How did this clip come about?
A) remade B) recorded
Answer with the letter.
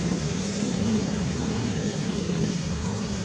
A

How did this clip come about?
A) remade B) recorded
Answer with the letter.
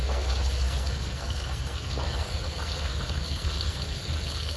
A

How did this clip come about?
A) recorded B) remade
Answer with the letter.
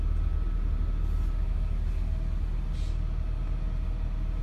A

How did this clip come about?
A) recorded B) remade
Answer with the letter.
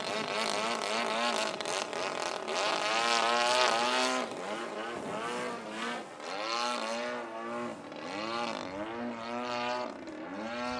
A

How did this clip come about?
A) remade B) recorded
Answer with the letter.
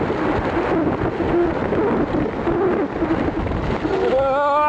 B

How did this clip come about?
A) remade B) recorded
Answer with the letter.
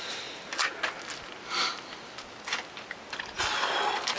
B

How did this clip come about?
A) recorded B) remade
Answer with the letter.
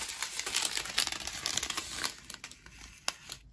A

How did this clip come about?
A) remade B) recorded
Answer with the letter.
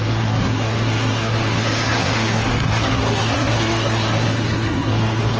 A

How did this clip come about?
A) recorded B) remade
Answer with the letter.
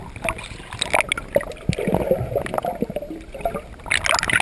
A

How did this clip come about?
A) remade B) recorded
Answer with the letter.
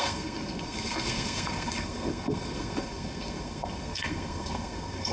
A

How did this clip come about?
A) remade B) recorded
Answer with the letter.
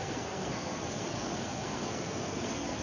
A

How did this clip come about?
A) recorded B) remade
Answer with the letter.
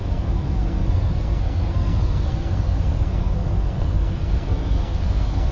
B